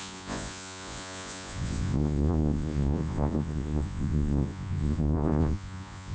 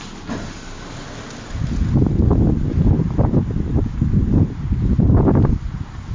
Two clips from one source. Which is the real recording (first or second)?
second